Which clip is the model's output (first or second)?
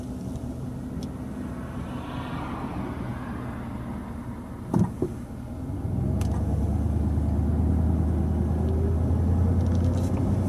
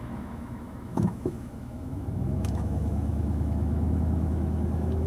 second